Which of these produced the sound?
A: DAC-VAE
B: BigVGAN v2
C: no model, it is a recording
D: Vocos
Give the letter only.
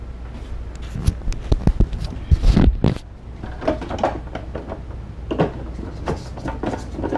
C